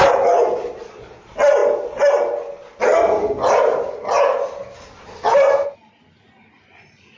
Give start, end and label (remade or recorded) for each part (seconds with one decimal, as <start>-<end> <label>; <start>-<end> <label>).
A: 0.0-7.2 recorded